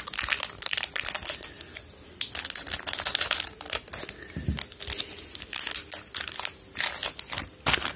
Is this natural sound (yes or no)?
yes